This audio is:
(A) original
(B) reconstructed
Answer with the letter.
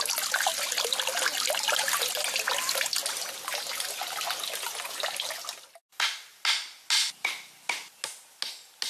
A